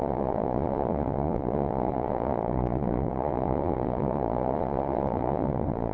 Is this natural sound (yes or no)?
no